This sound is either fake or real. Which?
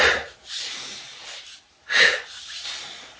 real